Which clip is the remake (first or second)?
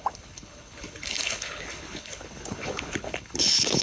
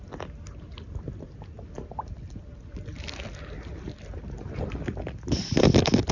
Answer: first